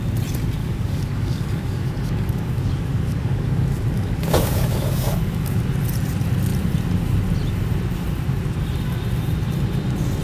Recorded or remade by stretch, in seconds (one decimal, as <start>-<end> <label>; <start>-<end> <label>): 0.0-0.6 recorded; 0.6-5.6 remade; 5.6-10.2 recorded

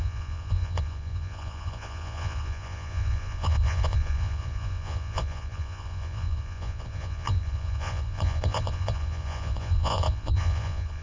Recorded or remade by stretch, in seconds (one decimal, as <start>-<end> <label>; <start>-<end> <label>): 0.0-11.0 remade

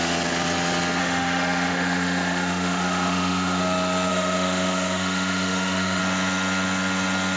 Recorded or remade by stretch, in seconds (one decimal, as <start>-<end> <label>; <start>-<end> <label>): 0.0-1.0 recorded; 1.0-3.6 remade; 3.6-4.1 recorded; 4.1-6.0 remade; 6.0-7.4 recorded

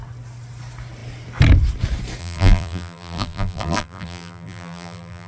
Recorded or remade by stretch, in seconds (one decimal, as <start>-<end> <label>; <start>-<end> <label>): 0.0-2.2 recorded; 2.2-5.3 remade

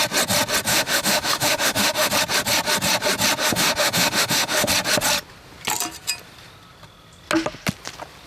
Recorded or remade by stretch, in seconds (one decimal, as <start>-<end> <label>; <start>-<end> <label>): 0.0-0.7 recorded; 0.7-2.1 remade; 2.1-3.4 recorded; 3.4-4.7 remade; 4.7-8.3 recorded

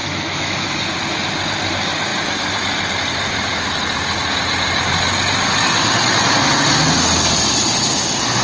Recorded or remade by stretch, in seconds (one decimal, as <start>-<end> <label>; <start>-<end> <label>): 0.0-0.9 remade; 0.9-8.4 recorded

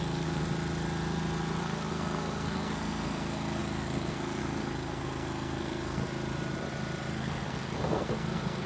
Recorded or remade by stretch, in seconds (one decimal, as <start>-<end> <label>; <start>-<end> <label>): 0.0-0.4 remade; 0.4-1.6 recorded; 1.6-6.0 remade; 6.0-7.1 recorded; 7.1-8.7 remade